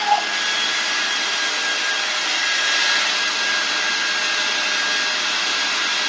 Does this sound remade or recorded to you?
recorded